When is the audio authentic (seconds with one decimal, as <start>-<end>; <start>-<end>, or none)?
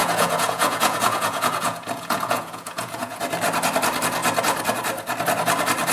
3.2-5.9